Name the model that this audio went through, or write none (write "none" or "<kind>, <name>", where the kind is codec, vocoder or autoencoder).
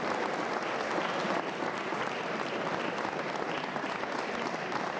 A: none